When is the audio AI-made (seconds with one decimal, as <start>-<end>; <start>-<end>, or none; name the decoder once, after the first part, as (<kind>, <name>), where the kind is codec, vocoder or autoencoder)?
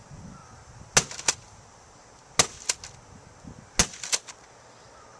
none